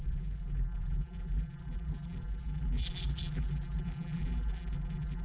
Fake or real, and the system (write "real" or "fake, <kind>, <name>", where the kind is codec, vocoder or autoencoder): fake, vocoder, BigVGAN v2